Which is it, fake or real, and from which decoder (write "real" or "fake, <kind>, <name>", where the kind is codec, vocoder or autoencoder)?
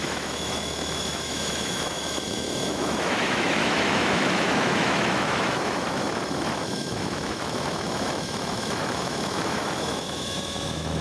fake, autoencoder, DAC-VAE